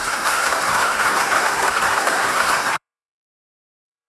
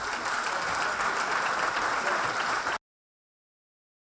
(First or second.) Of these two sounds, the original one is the second